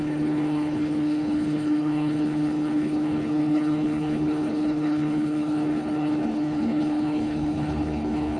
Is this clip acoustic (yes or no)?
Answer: no